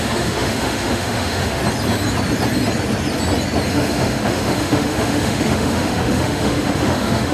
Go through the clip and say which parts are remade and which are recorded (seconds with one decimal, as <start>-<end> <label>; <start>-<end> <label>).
0.0-1.6 remade; 1.6-3.7 recorded; 3.7-7.3 remade